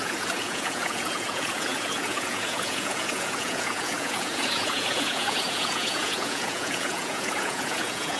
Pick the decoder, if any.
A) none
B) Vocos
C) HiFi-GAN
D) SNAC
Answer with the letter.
B